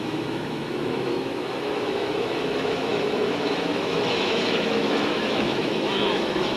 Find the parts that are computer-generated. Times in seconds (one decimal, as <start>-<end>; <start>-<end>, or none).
0.0-6.6